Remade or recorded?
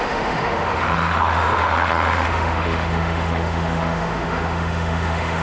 remade